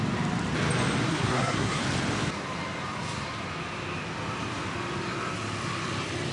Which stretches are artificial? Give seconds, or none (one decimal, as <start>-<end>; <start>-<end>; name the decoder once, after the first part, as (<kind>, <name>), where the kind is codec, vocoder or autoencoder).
1.1-1.8 (codec, SNAC)